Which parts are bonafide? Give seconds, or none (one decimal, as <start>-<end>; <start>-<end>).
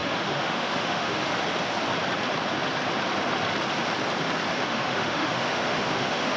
1.3-4.5